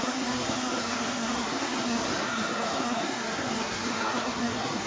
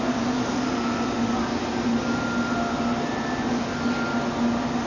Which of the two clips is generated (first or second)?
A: first